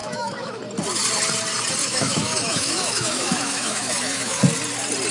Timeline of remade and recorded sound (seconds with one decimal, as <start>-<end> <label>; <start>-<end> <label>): 0.0-0.6 remade; 0.6-1.8 recorded; 1.8-4.4 remade; 4.4-5.1 recorded